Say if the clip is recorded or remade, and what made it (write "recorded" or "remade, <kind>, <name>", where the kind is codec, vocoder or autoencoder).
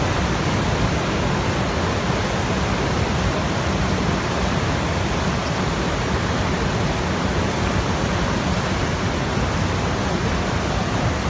recorded